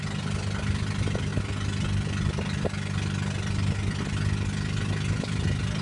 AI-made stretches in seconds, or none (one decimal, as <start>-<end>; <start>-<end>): none